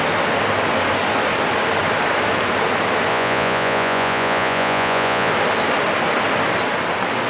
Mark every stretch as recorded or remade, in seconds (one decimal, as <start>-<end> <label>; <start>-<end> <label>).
0.0-3.1 recorded; 3.1-5.3 remade; 5.3-7.3 recorded